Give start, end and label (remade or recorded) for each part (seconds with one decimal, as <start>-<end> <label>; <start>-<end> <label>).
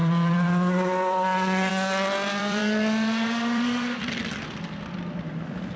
0.0-1.7 remade; 1.7-2.4 recorded; 2.4-4.2 remade; 4.2-5.8 recorded